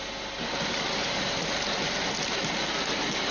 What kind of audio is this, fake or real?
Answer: real